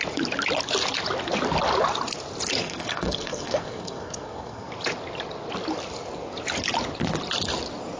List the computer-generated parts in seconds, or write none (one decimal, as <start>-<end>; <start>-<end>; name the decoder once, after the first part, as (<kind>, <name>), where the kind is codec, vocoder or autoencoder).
2.6-4.7 (codec, SNAC)